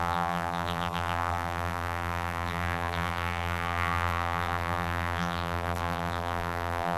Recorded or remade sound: remade